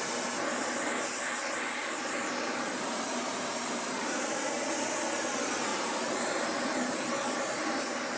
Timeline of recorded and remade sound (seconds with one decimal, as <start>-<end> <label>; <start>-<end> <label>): 0.0-1.8 recorded; 1.8-4.7 remade; 4.7-5.7 recorded; 5.7-8.2 remade